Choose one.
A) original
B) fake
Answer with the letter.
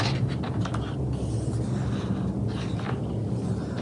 A